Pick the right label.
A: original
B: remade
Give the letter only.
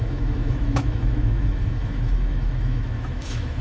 B